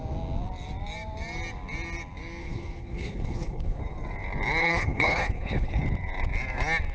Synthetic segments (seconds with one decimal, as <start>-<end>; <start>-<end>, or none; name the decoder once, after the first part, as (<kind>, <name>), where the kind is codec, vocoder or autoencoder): 2.4-3.8 (codec, HILCodec); 4.6-5.8